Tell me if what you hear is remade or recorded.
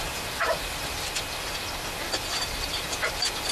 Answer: remade